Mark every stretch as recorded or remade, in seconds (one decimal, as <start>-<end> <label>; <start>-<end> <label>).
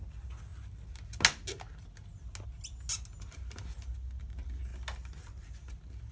0.0-6.1 recorded